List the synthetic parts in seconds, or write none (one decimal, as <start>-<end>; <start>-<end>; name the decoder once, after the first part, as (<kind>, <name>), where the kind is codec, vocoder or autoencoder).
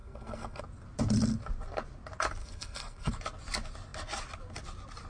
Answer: 0.0-0.6 (codec, SNAC); 2.4-3.1